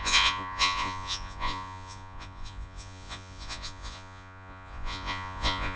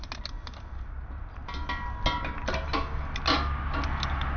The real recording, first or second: second